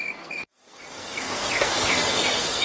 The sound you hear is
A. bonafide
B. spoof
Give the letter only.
B